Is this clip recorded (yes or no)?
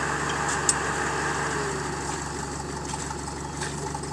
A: yes